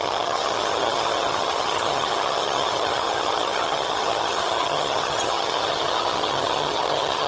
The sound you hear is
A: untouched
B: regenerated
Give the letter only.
B